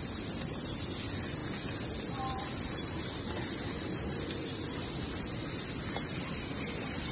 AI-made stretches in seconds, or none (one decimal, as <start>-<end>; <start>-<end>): 0.0-1.4; 2.7-7.1